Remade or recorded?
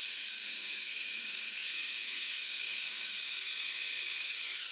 remade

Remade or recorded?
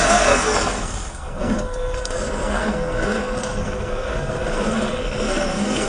remade